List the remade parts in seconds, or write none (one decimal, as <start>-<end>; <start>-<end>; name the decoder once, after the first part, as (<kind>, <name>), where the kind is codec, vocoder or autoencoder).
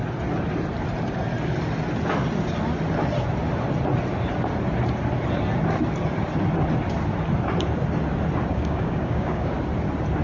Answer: 8.5-9.5 (codec, DAC)